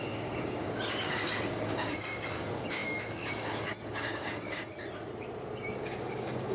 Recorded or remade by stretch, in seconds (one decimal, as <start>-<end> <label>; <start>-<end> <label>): 0.0-4.7 remade; 4.7-5.7 recorded; 5.7-6.5 remade